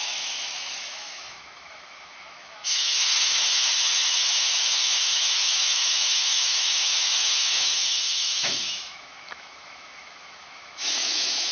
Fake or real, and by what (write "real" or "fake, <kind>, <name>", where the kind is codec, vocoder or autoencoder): fake, autoencoder, DAC-VAE